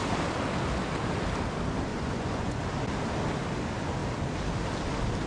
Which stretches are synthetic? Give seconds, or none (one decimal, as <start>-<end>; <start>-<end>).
1.9-2.6